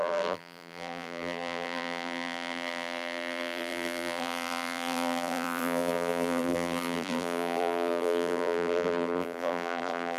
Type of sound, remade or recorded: remade